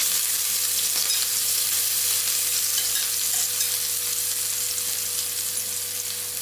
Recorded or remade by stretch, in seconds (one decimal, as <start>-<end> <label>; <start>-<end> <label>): 0.0-1.0 recorded; 1.0-1.8 remade; 1.8-6.4 recorded